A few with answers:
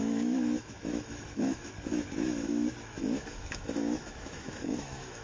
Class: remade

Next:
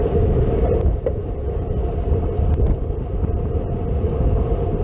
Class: recorded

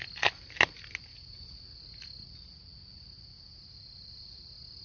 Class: recorded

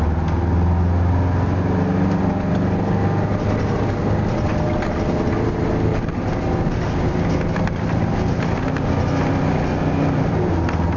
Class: recorded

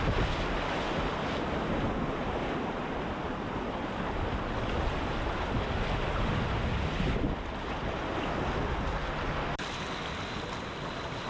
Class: recorded